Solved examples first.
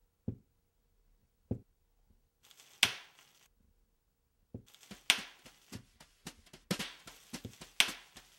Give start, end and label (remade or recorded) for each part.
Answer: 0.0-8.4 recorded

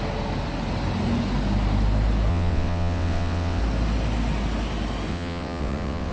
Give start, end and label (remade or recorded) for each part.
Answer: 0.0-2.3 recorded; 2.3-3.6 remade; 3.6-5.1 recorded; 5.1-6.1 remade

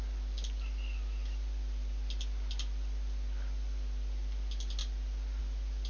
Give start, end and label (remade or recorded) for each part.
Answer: 0.0-5.9 recorded

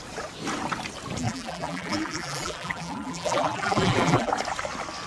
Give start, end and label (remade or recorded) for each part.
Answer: 0.0-1.2 recorded; 1.2-4.3 remade; 4.3-5.1 recorded

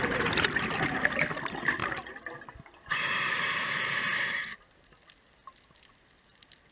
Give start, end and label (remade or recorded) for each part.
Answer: 0.0-6.7 recorded